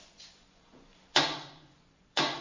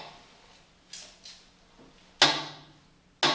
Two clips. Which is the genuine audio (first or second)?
second